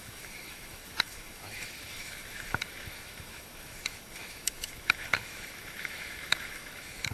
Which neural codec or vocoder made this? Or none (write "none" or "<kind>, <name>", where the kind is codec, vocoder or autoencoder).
autoencoder, DAC-VAE